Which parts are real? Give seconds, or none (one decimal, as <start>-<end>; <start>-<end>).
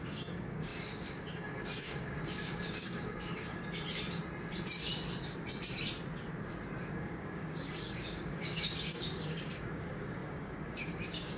3.6-6.8